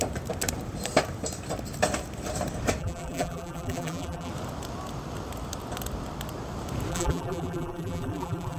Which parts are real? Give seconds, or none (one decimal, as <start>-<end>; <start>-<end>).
0.0-2.8; 4.3-6.9